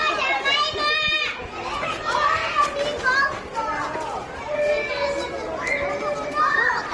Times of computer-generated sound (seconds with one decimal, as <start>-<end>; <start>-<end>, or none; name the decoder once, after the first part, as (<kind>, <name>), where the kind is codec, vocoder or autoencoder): none